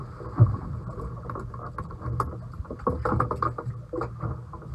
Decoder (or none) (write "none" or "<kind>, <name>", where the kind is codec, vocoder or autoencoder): none